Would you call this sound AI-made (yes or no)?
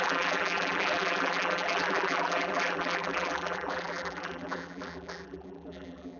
yes